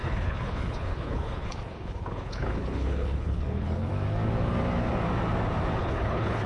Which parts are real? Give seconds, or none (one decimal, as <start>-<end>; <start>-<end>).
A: 3.9-5.8